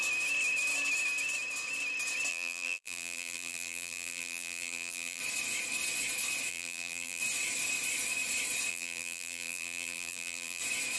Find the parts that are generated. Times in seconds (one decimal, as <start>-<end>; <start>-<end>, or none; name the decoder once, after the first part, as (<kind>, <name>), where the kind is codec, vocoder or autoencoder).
2.3-5.2 (vocoder, BigVGAN v2); 6.5-7.2; 8.7-10.6